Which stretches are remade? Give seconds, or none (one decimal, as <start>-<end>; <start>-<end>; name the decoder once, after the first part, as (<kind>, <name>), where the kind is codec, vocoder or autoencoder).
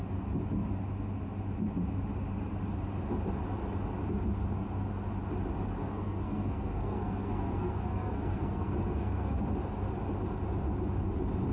5.8-9.4 (codec, SNAC)